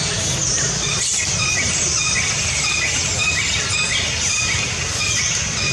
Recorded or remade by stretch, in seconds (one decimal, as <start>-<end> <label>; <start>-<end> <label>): 0.0-5.7 recorded